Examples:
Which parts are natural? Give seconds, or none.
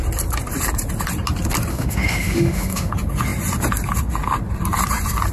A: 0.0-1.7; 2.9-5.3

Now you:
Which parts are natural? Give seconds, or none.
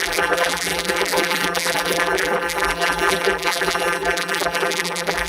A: none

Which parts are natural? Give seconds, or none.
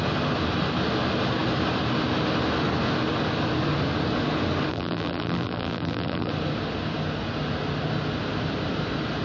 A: 0.0-4.7; 6.3-9.2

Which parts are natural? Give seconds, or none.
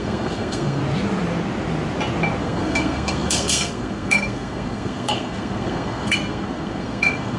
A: 0.8-2.4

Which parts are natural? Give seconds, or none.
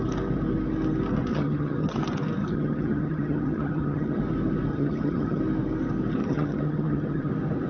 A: 0.0-1.3; 2.0-2.4; 4.2-4.7; 5.4-6.2; 7.3-7.7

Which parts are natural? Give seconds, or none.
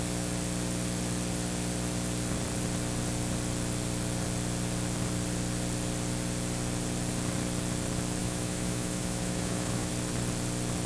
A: 0.0-8.2; 9.9-10.9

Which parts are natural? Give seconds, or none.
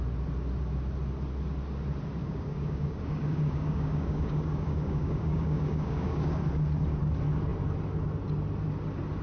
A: 0.0-2.2; 6.3-9.2